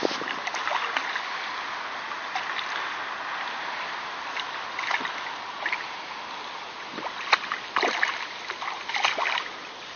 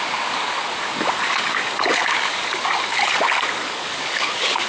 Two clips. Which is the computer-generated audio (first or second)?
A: second